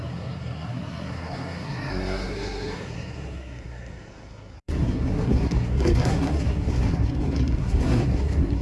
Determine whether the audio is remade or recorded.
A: remade